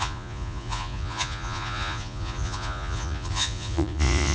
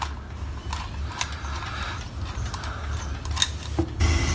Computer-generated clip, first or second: first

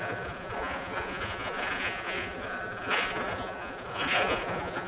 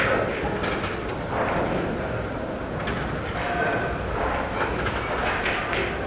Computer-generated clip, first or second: first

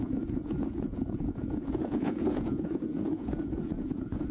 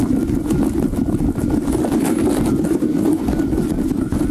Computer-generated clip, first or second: first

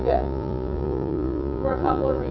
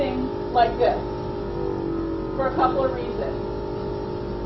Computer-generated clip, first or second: first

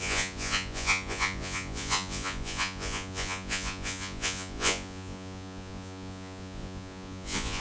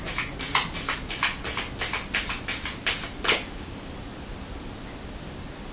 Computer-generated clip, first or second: first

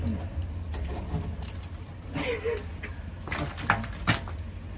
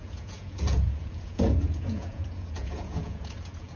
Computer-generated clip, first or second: second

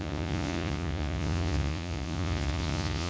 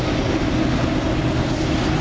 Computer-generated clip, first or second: first